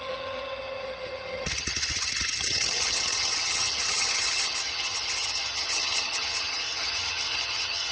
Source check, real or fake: fake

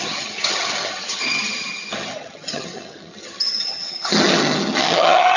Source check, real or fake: fake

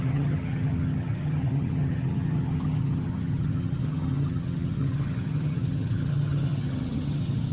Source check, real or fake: fake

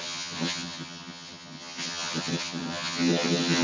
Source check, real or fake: fake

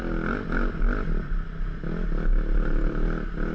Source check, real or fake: real